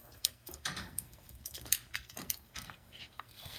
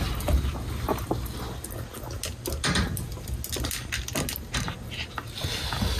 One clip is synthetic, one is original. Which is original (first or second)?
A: second